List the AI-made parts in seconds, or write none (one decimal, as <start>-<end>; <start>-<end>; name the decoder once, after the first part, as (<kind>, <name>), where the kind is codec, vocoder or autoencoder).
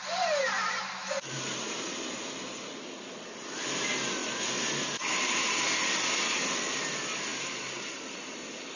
1.0-2.7 (vocoder, BigVGAN v2); 7.3-8.8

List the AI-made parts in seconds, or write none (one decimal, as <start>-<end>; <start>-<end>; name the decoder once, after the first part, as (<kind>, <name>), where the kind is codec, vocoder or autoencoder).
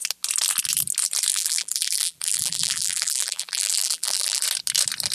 1.3-4.4 (vocoder, BigVGAN v2)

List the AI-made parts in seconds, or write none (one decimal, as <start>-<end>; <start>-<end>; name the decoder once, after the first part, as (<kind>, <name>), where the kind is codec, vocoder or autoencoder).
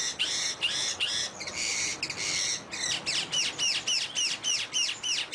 0.0-1.2 (vocoder, BigVGAN v2)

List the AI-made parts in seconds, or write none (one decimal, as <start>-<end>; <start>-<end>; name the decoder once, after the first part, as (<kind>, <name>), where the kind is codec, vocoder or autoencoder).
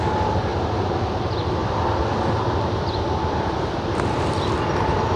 0.5-1.1 (vocoder, BigVGAN v2); 1.6-4.6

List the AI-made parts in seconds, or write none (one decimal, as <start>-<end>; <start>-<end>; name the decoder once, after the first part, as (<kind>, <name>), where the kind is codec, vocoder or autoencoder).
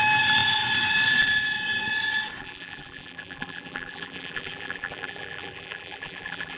2.4-6.6 (vocoder, BigVGAN v2)